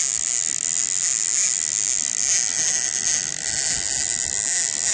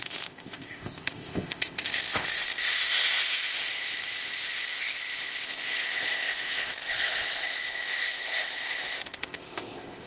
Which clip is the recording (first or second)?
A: first